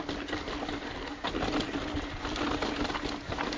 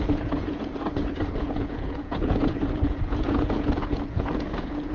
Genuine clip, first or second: first